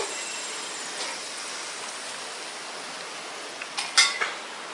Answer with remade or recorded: recorded